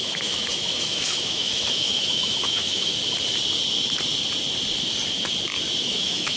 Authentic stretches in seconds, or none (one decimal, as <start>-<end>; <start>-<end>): 2.9-5.8